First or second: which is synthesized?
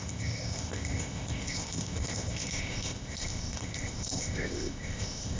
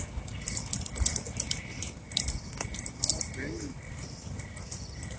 first